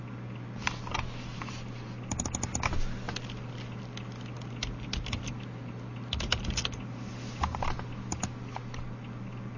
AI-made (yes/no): no